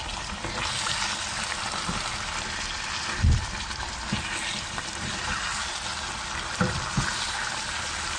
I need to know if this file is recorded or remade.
recorded